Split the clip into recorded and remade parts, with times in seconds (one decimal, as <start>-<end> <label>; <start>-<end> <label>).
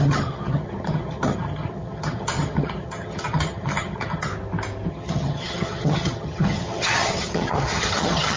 0.0-4.3 remade; 4.3-4.9 recorded; 4.9-8.4 remade